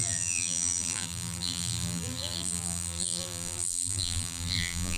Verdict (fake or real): fake